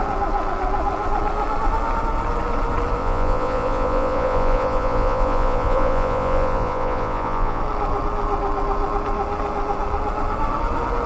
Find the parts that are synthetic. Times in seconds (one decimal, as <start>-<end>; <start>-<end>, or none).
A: 3.0-7.6